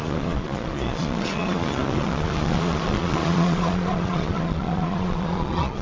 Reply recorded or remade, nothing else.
remade